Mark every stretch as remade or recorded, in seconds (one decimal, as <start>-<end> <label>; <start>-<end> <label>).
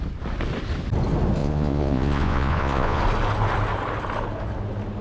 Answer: 0.0-1.4 recorded; 1.4-3.0 remade; 3.0-5.0 recorded